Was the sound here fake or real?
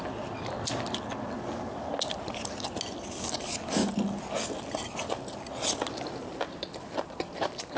real